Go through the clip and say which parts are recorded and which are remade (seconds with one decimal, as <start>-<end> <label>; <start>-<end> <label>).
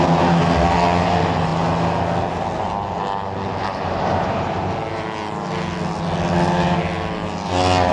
0.0-3.6 recorded; 3.6-4.7 remade; 4.7-7.9 recorded